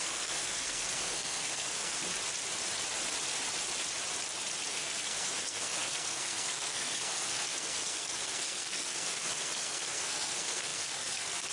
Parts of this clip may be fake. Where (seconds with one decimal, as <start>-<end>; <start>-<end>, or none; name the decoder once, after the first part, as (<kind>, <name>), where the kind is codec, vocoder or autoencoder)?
0.0-2.0 (codec, SNAC); 4.7-11.5